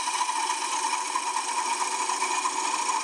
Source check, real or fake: real